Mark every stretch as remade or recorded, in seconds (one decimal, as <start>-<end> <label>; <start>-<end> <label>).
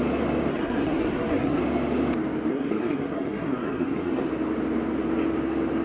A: 0.0-0.5 recorded; 0.5-1.6 remade; 1.6-2.5 recorded; 2.5-4.3 remade; 4.3-5.8 recorded